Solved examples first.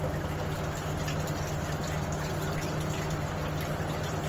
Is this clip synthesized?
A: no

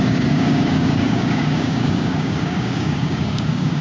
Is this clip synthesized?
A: yes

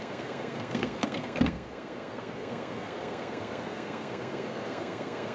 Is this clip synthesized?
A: yes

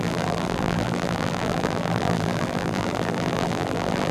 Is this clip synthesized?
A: yes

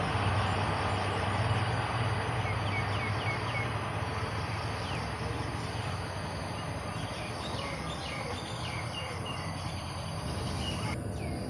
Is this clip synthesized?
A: no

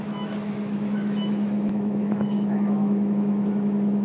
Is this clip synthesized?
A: yes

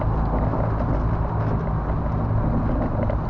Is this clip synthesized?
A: no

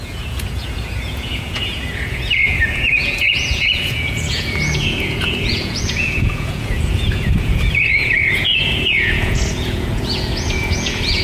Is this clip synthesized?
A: yes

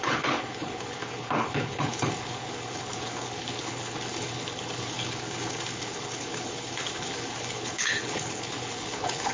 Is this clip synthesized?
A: yes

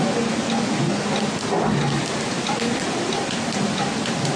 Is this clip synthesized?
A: no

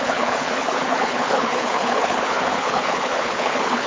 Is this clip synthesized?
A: yes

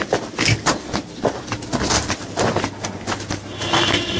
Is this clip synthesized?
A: no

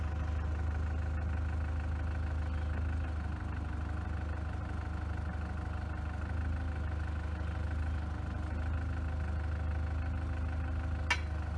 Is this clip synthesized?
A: no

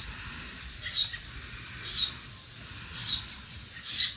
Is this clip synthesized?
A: no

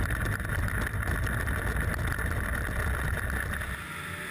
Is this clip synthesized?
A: no